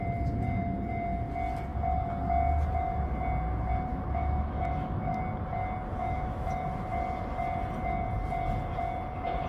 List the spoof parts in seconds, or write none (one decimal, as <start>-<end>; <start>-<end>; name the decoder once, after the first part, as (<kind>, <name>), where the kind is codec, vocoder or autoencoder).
3.9-5.2 (autoencoder, DAC-VAE); 6.0-6.5